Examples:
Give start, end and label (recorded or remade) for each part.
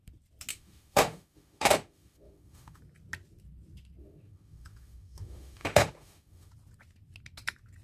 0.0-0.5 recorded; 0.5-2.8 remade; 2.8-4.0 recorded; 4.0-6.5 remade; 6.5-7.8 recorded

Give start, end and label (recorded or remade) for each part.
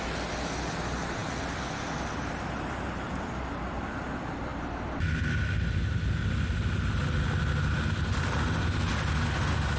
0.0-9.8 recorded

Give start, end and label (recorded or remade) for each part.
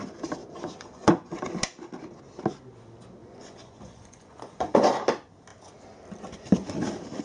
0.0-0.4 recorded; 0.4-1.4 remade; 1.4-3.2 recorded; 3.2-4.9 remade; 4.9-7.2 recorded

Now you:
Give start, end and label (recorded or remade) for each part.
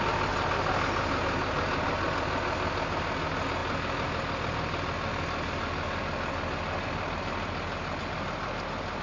0.0-9.0 recorded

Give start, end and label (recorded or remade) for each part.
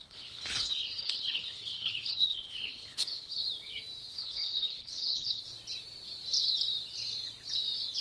0.0-3.4 remade; 3.4-4.1 recorded; 4.1-5.4 remade; 5.4-8.0 recorded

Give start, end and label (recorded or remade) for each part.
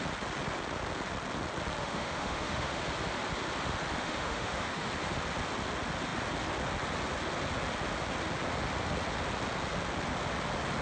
0.0-1.8 recorded; 1.8-2.8 remade; 2.8-4.0 recorded; 4.0-4.9 remade; 4.9-10.8 recorded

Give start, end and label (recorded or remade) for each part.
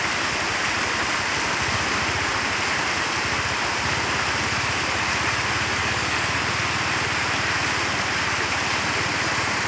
0.0-5.8 recorded; 5.8-6.4 remade; 6.4-9.7 recorded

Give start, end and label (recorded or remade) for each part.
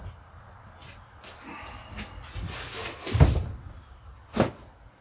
0.0-5.0 recorded